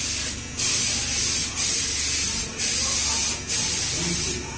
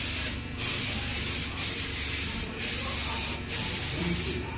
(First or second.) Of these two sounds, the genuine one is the first